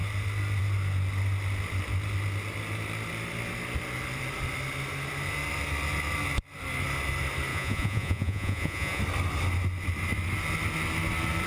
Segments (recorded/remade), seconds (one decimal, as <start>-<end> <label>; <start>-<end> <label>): 0.0-7.5 recorded; 7.5-9.0 remade; 9.0-11.5 recorded